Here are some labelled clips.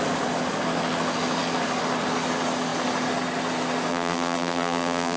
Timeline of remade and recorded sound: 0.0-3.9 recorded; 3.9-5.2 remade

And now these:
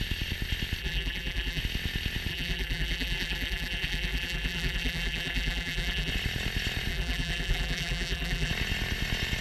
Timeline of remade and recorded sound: 0.0-0.8 recorded; 0.8-1.6 remade; 1.6-2.3 recorded; 2.3-6.1 remade; 6.1-6.9 recorded; 6.9-8.5 remade; 8.5-9.4 recorded

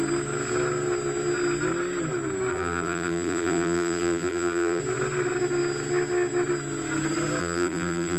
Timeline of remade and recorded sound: 0.0-2.5 recorded; 2.5-4.8 remade; 4.8-7.4 recorded; 7.4-8.2 remade

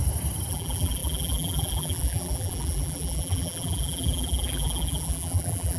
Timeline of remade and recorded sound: 0.0-0.5 recorded; 0.5-5.8 remade